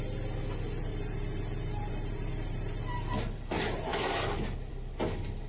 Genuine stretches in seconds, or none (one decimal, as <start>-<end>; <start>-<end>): 0.0-0.9; 2.8-5.5